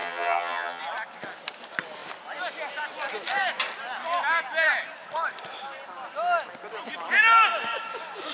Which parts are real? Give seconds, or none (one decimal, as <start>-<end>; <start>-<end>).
0.8-8.3